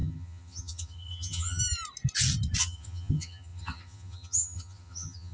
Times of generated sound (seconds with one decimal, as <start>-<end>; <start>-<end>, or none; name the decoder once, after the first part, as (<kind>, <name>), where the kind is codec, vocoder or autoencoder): 0.0-1.6 (vocoder, HiFi-GAN); 2.6-5.3